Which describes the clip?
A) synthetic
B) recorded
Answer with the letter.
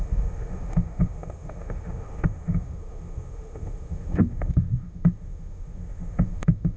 A